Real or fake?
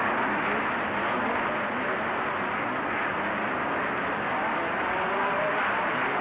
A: real